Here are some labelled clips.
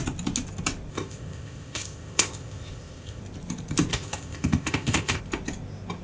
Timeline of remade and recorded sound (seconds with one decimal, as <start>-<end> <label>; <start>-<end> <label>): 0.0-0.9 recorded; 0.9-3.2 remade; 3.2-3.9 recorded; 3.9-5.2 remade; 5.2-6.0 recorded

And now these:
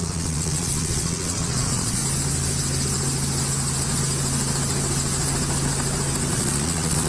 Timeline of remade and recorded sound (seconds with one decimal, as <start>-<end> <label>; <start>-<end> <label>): 0.0-2.0 remade; 2.0-6.3 recorded; 6.3-7.1 remade

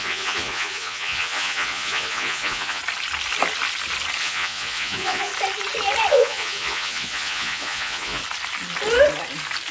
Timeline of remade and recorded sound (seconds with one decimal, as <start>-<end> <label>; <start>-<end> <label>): 0.0-2.8 remade; 2.8-4.2 recorded; 4.2-5.3 remade; 5.3-6.1 recorded; 6.1-8.2 remade; 8.2-9.7 recorded

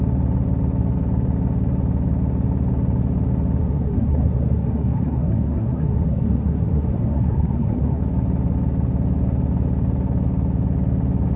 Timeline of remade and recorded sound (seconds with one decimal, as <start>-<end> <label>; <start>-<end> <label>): 0.0-3.6 recorded; 3.6-8.0 remade; 8.0-11.4 recorded

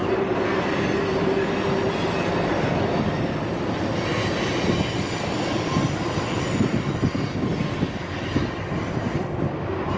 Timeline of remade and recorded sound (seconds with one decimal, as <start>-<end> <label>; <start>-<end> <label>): 0.0-10.0 recorded

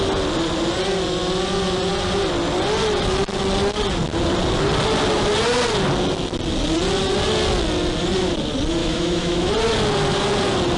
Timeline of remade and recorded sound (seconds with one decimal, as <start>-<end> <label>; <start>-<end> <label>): 0.0-8.8 recorded; 8.8-9.5 remade; 9.5-10.8 recorded

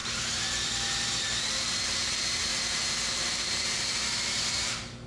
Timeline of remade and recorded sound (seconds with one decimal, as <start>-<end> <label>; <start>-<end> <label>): 0.0-2.5 remade; 2.5-3.1 recorded; 3.1-5.1 remade

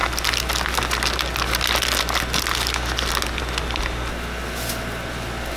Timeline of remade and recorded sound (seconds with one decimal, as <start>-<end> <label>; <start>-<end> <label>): 0.0-5.6 recorded